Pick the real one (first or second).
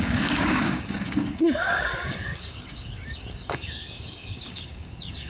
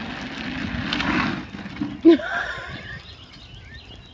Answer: second